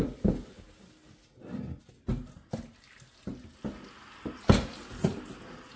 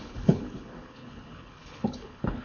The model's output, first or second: second